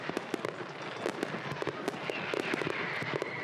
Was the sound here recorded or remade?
recorded